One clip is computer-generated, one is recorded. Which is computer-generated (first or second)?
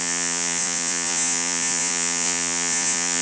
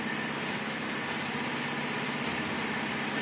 first